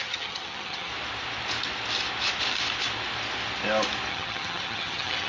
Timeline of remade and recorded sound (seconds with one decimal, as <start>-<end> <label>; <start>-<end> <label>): 0.0-0.9 remade; 0.9-4.1 recorded; 4.1-5.3 remade